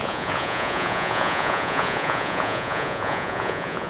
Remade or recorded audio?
remade